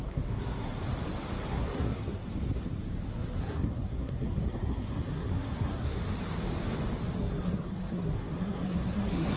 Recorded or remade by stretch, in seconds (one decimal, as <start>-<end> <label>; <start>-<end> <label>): 0.0-0.8 remade; 0.8-1.5 recorded; 1.5-2.2 remade; 2.2-3.1 recorded; 3.1-6.0 remade; 6.0-7.2 recorded; 7.2-9.4 remade